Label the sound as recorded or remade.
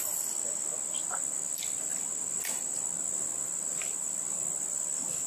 recorded